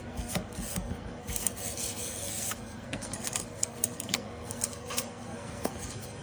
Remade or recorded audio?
remade